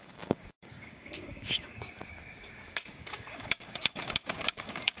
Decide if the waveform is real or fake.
fake